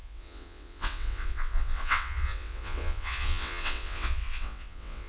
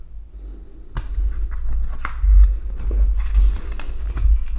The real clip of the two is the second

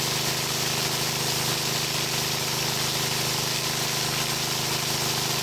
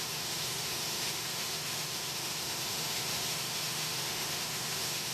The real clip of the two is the first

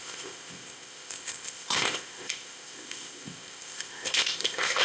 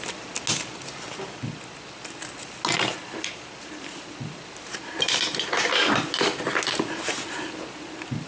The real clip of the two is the second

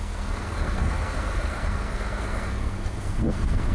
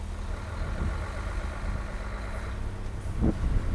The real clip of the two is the second